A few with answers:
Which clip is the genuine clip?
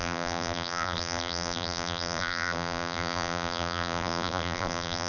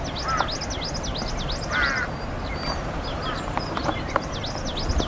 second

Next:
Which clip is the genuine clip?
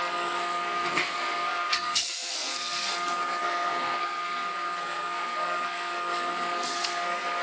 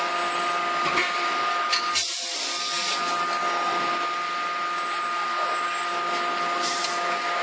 second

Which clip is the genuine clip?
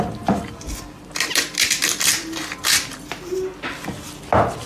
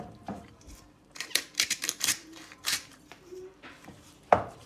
first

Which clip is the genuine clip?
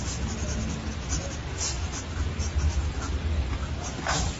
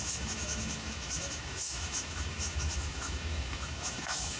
first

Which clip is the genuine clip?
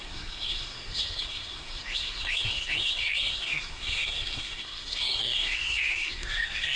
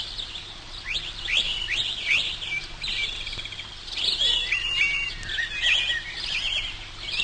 second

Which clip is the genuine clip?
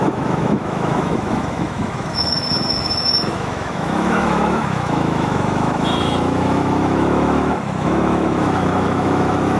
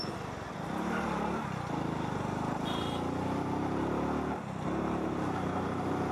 second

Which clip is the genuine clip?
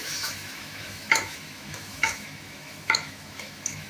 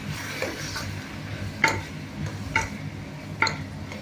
second